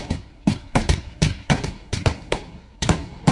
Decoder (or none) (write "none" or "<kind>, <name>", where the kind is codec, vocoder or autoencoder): codec, SNAC